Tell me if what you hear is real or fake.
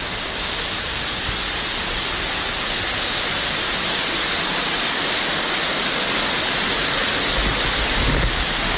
real